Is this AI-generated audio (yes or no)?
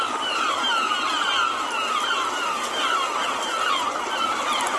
no